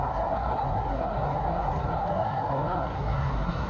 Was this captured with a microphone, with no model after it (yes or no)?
no